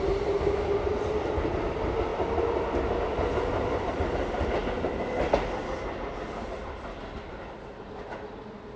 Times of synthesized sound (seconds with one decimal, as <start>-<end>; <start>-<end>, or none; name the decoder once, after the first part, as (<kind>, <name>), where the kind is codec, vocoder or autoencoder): none